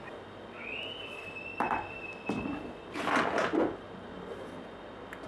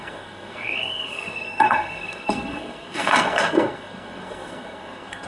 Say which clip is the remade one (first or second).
second